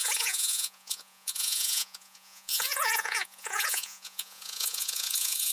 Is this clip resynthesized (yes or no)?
yes